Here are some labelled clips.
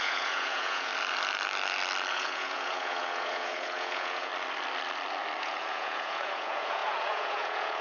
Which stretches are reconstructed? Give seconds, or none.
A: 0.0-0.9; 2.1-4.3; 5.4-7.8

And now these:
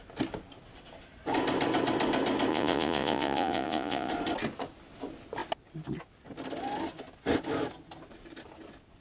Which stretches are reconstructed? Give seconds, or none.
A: 2.5-4.1

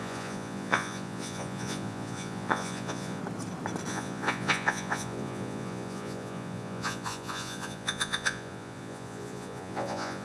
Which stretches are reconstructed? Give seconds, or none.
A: 0.0-3.2; 3.9-10.2

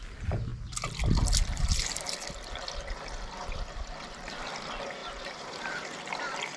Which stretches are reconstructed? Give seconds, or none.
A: none

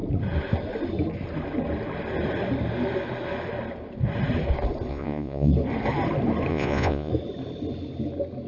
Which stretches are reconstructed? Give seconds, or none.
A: 4.9-5.5; 6.5-7.1

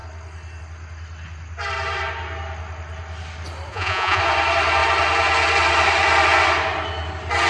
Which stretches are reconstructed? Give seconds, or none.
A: 3.7-4.2

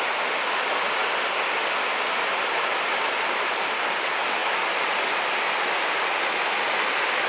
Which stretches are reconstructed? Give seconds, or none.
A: none

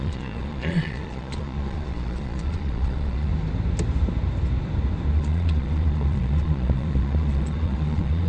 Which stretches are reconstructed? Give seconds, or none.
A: 0.0-3.3; 5.1-8.3